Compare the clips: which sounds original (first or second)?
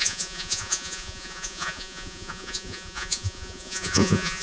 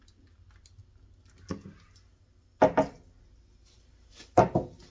second